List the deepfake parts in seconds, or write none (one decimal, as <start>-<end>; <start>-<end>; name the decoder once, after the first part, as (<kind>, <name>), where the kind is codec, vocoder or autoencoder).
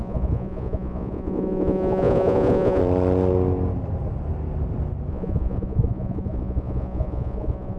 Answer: 0.0-2.8 (vocoder, Vocos); 5.1-7.8